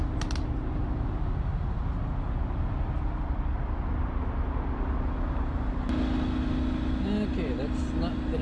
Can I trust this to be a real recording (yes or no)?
yes